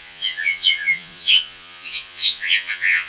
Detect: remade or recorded remade